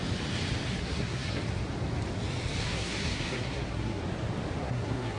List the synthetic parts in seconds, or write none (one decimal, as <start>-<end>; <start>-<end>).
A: 0.7-1.4; 2.6-4.0; 4.6-5.2